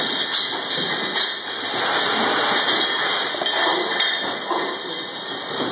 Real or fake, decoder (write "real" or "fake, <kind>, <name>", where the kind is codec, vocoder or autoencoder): real